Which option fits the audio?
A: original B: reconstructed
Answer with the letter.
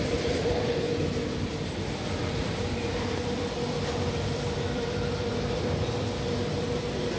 B